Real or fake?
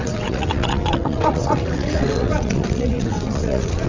fake